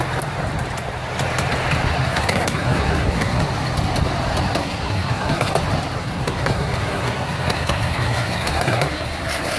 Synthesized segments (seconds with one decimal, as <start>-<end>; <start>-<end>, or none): 1.9-3.4; 4.6-5.5; 6.0-9.6